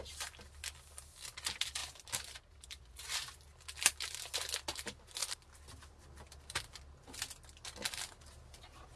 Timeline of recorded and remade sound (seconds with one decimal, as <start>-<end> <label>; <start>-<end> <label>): 0.0-1.8 recorded; 1.8-2.5 remade; 2.5-5.2 recorded; 5.2-6.8 remade; 6.8-9.0 recorded